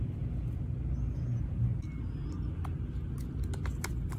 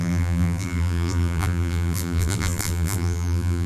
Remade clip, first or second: second